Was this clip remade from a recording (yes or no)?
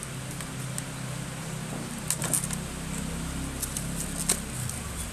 no